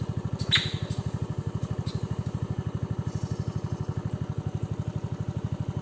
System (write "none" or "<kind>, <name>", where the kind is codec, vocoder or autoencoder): none